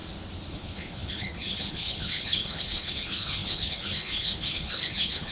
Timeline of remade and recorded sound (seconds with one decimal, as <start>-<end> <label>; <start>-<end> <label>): 0.0-0.5 recorded; 0.5-5.3 remade